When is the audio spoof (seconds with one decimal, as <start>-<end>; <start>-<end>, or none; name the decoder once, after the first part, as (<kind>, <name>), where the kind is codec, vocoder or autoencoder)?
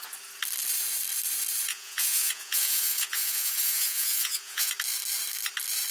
1.7-4.7 (vocoder, Vocos)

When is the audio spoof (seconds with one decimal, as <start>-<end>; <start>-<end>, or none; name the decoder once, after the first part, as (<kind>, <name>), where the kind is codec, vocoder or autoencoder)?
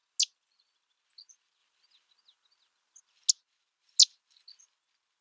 none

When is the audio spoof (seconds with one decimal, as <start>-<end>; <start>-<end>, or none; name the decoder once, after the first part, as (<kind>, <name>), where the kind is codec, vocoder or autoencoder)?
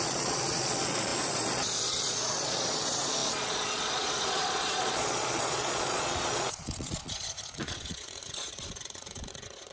0.0-9.7 (vocoder, Vocos)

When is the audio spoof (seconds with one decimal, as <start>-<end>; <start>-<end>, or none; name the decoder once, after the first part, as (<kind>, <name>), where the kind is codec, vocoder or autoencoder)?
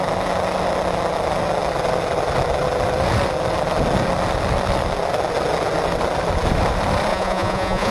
7.1-7.9 (vocoder, Vocos)